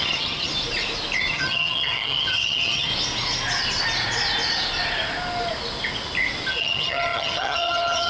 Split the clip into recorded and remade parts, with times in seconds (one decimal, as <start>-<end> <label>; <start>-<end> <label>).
0.0-0.5 remade; 0.5-1.3 recorded; 1.3-2.9 remade; 2.9-6.5 recorded; 6.5-8.1 remade